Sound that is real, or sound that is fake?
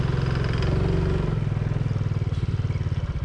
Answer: real